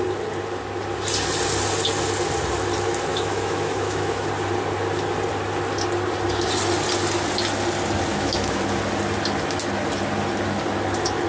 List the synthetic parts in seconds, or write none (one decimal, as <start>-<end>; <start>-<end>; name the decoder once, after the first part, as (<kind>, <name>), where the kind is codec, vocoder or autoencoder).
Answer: 3.1-4.3 (autoencoder, DAC-VAE); 8.1-8.6